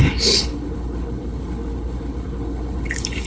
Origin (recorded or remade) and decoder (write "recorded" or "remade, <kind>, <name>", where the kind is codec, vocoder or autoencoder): remade, codec, HILCodec